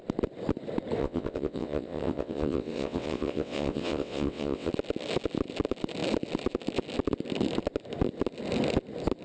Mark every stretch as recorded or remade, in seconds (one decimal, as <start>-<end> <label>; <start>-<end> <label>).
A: 0.0-1.0 recorded; 1.0-4.7 remade; 4.7-9.2 recorded